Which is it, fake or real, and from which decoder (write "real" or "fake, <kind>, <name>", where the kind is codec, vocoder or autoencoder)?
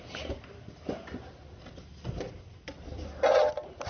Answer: real